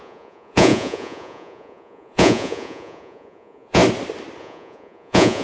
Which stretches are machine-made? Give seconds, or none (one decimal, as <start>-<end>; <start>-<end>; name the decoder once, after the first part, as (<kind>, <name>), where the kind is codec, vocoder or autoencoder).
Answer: 0.0-3.8 (vocoder, Vocos); 4.4-5.4